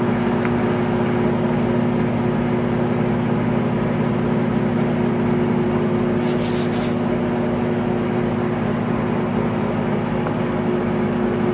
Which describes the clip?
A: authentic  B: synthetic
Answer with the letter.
A